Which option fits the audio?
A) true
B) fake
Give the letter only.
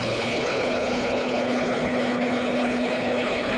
B